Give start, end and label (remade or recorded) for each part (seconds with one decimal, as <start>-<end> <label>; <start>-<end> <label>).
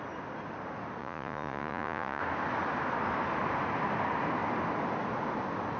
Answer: 0.0-1.0 recorded; 1.0-2.2 remade; 2.2-5.8 recorded